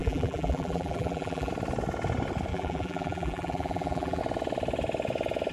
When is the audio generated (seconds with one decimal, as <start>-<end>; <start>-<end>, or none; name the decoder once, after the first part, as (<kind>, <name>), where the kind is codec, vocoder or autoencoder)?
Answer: 0.0-1.5 (vocoder, BigVGAN v2); 2.5-4.2